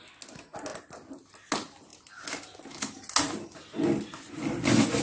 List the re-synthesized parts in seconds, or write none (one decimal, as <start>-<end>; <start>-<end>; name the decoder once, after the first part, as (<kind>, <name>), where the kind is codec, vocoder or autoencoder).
none